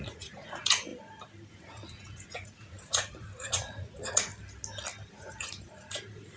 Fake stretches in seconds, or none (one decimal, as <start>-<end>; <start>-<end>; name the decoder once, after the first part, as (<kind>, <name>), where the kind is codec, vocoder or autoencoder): 0.0-0.9 (vocoder, Vocos); 1.5-4.3; 5.1-6.4